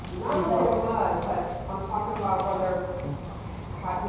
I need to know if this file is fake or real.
real